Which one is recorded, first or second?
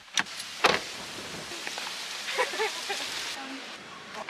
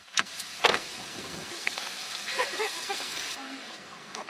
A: first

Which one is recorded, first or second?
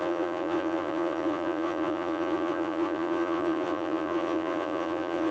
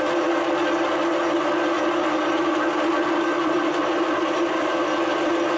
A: second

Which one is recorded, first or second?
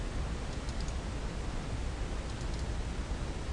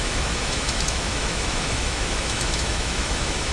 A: first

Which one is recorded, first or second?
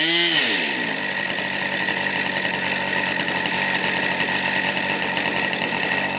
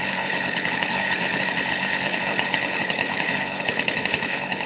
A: first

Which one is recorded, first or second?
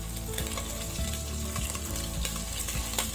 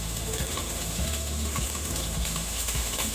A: first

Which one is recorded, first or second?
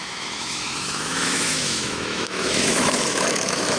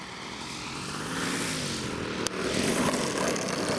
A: second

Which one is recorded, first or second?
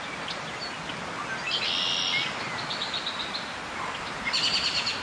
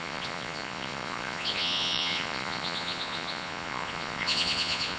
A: first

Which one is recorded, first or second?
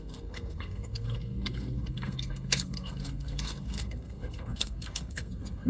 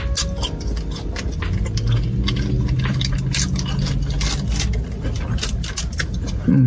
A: second